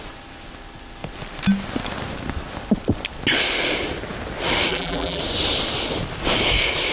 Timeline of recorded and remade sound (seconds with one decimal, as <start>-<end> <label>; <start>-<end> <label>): 0.0-4.7 recorded; 4.7-5.2 remade; 5.2-6.9 recorded